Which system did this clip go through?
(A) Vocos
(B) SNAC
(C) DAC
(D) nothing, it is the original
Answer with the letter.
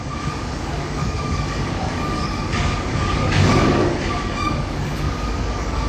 C